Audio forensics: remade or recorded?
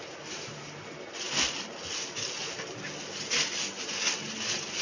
recorded